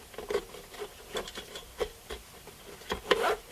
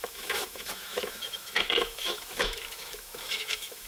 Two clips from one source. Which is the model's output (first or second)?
second